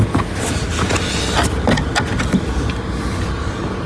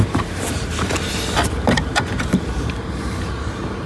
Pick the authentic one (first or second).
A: first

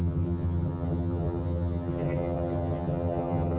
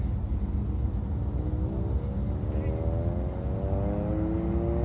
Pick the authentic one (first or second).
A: second